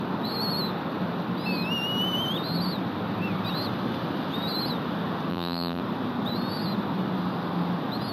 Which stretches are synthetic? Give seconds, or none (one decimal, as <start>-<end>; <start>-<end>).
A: 5.3-5.8